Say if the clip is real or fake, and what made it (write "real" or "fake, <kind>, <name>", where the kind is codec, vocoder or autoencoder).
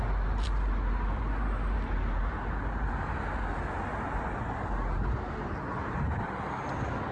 real